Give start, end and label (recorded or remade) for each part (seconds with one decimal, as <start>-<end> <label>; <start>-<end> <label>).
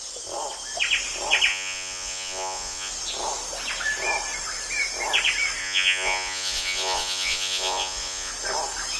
0.0-1.5 recorded; 1.5-2.9 remade; 2.9-5.6 recorded; 5.6-8.3 remade; 8.3-9.0 recorded